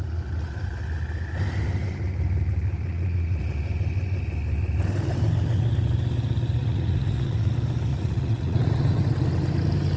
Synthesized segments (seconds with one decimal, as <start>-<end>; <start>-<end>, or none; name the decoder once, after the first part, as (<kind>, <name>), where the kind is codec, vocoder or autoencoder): 2.9-3.4 (vocoder, Vocos); 6.6-7.5; 7.9-9.0